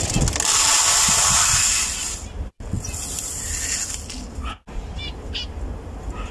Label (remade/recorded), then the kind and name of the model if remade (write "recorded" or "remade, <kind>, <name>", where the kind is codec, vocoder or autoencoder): recorded